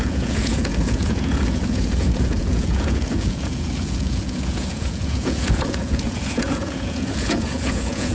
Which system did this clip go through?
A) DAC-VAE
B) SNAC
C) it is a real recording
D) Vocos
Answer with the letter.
D